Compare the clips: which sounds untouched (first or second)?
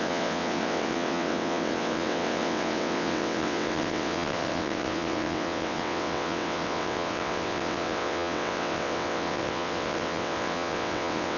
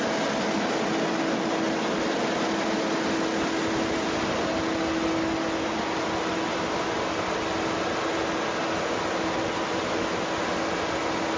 second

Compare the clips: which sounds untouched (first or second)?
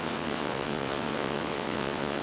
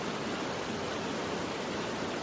second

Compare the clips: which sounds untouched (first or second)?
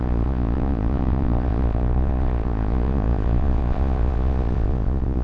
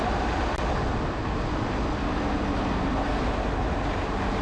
second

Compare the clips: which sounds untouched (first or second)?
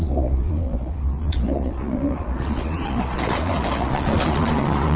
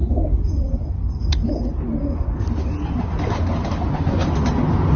second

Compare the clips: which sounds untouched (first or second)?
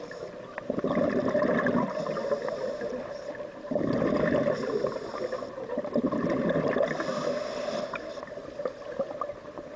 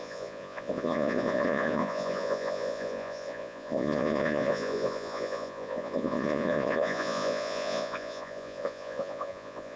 first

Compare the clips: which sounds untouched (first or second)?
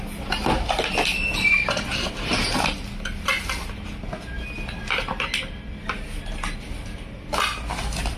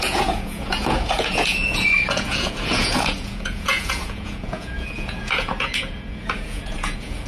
first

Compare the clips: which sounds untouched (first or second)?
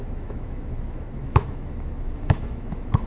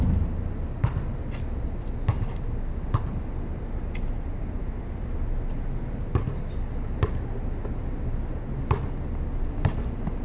second